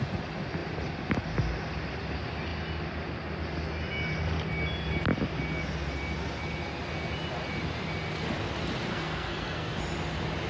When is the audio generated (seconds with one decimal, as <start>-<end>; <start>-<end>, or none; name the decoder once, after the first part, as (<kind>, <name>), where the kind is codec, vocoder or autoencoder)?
8.9-9.8 (codec, SNAC)